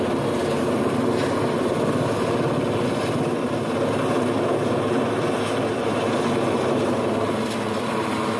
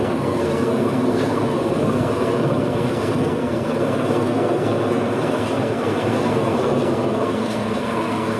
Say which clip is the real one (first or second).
first